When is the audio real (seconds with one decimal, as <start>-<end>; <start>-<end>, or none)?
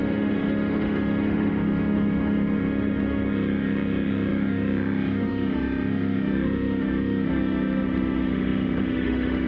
none